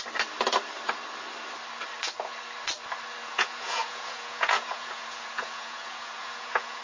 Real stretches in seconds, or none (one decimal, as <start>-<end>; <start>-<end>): 0.0-3.2